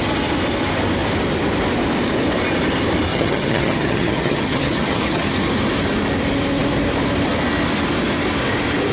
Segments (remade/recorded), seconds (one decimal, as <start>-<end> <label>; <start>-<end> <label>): 0.0-3.1 recorded; 3.1-5.3 remade; 5.3-8.9 recorded